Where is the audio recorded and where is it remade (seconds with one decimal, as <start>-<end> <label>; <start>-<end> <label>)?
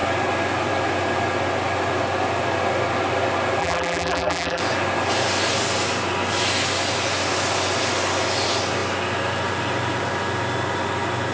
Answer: 0.0-3.6 recorded; 3.6-4.6 remade; 4.6-11.3 recorded